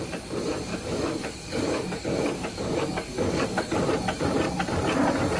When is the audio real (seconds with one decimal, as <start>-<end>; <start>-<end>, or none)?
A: 0.0-0.7; 3.9-5.4